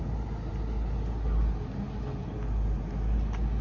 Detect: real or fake real